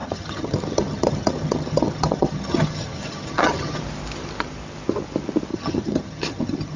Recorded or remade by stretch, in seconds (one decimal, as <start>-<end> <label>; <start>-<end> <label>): 0.0-3.8 remade; 3.8-5.5 recorded; 5.5-6.8 remade